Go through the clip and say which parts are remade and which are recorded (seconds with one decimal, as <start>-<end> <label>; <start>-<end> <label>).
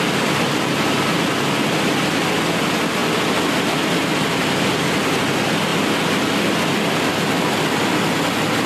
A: 0.0-8.7 recorded